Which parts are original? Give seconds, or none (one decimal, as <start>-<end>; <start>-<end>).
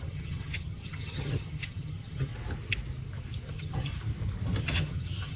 2.3-3.5; 3.9-4.6